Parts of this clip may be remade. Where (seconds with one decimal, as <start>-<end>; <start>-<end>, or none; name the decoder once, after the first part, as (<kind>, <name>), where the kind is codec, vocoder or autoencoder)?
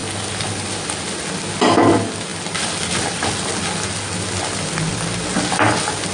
none